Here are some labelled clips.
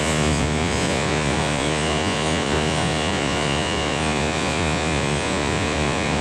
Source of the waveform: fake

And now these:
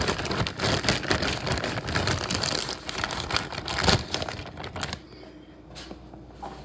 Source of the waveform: real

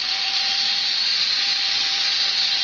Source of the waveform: fake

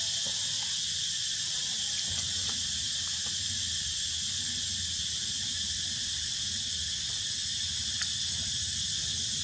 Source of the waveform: real